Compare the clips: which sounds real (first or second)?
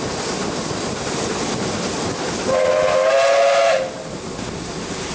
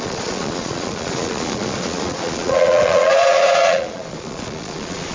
first